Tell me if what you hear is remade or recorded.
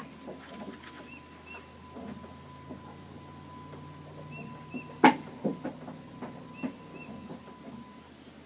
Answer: recorded